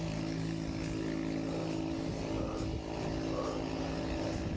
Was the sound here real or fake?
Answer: real